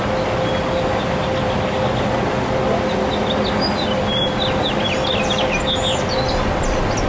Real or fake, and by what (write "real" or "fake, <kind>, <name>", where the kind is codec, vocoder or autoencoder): real